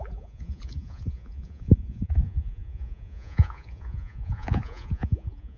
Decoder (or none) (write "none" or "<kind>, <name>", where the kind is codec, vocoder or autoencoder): vocoder, Vocos